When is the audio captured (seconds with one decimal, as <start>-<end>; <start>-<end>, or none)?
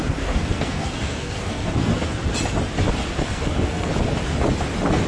1.9-3.1; 3.9-5.1